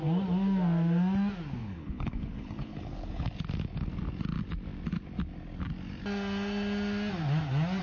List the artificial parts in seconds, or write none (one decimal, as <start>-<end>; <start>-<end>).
1.6-3.3